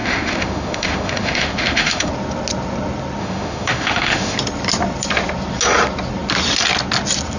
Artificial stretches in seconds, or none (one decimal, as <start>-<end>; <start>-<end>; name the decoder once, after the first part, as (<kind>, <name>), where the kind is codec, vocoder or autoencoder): 0.0-2.1 (autoencoder, DAC-VAE); 3.2-4.4